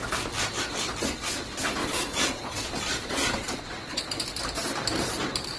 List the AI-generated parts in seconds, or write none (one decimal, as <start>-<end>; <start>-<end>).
1.8-4.0

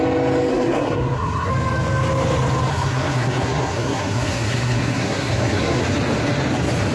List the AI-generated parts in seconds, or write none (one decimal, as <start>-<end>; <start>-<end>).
0.5-1.5; 2.7-5.8

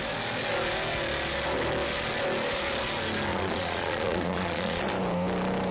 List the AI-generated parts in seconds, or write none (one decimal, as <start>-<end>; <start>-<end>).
3.3-4.8

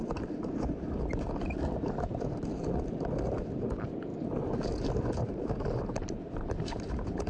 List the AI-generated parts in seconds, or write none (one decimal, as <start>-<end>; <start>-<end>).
0.0-4.1; 5.1-7.3

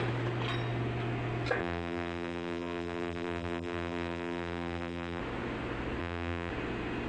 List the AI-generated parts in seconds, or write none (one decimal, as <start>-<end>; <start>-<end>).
1.6-5.2; 6.0-6.5

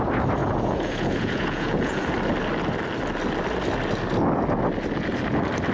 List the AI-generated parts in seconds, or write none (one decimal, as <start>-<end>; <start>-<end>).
0.4-2.0

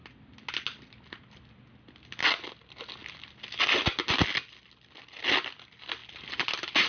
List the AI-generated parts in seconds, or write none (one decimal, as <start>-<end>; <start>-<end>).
none